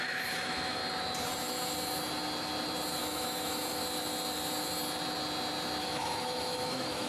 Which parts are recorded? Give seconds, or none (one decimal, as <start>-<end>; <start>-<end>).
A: 0.8-3.0; 3.8-5.8